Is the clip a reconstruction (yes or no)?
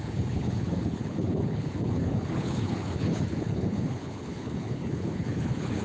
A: yes